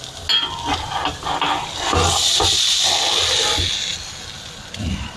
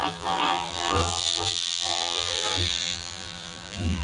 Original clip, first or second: first